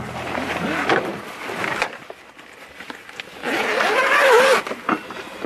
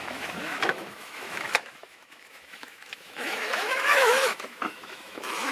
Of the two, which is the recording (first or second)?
first